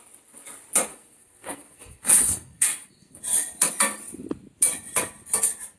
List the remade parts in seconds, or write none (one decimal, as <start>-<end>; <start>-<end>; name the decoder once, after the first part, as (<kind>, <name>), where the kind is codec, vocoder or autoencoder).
0.9-3.2 (codec, SNAC)